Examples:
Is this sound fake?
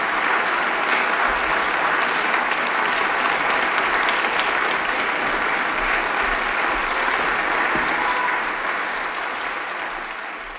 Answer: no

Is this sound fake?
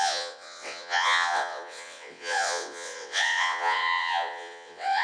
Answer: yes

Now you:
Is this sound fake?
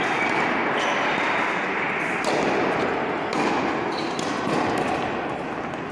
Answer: no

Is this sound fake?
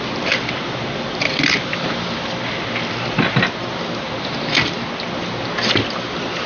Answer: no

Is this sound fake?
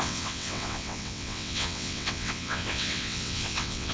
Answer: yes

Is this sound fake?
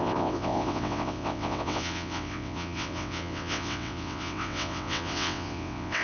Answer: yes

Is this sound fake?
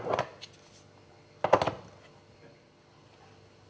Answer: no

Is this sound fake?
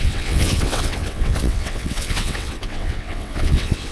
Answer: yes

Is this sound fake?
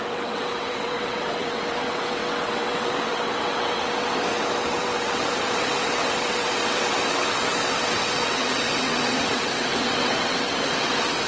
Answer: yes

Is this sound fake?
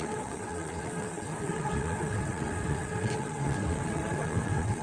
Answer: yes